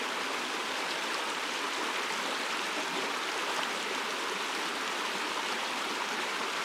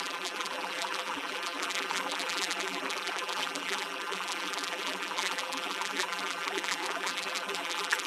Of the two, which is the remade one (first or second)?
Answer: second